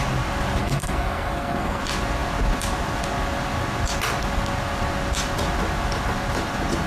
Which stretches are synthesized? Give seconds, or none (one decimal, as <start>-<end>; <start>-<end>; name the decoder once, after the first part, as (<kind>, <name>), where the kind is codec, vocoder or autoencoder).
0.6-1.8 (codec, SNAC)